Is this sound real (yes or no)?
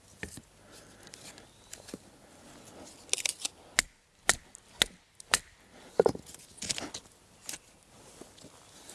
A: yes